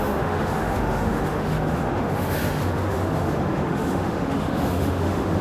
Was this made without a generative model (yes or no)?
no